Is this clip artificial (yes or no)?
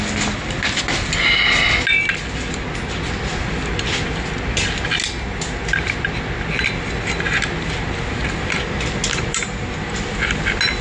no